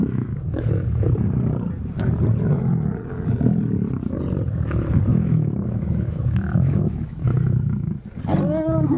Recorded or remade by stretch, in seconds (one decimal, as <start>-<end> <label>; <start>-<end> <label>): 0.0-1.1 remade; 1.1-5.1 recorded; 5.1-8.0 remade; 8.0-9.0 recorded